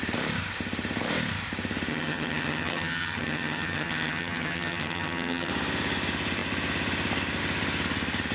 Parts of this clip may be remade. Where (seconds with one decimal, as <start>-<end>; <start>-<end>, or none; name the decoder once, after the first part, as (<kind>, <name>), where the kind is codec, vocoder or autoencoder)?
1.9-5.5 (vocoder, HiFi-GAN)